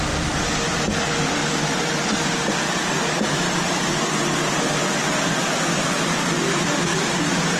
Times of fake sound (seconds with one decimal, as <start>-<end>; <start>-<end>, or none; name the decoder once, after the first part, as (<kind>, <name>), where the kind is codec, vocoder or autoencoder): 6.9-7.6 (vocoder, BigVGAN v2)